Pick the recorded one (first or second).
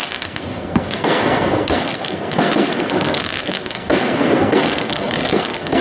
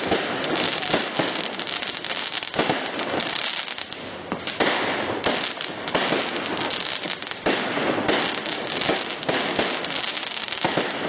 second